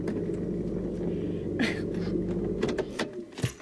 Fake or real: real